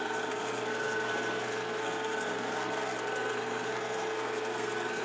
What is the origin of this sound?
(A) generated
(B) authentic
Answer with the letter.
A